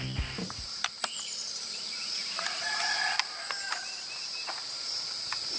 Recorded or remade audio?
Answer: remade